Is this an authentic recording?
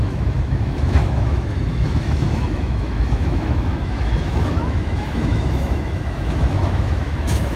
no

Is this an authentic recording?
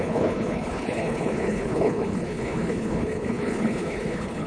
no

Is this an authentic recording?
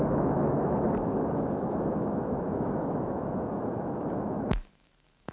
no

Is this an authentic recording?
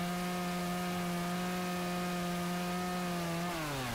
yes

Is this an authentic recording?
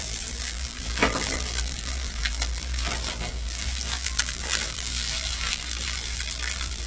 no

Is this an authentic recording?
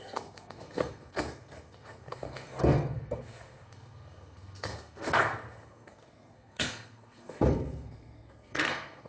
no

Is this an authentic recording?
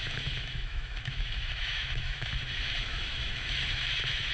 no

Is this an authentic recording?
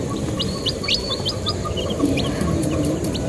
no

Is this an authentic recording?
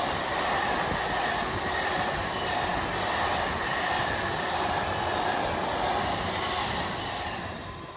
yes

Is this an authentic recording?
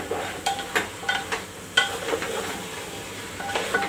no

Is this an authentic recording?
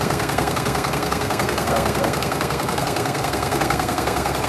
no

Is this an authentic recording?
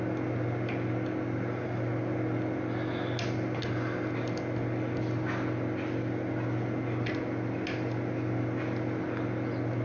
yes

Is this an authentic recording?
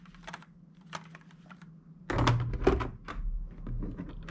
yes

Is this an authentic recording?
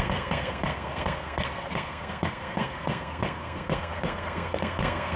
no